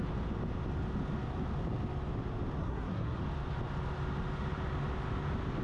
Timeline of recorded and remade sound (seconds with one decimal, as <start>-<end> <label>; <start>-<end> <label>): 0.0-2.6 recorded; 2.6-3.2 remade; 3.2-5.6 recorded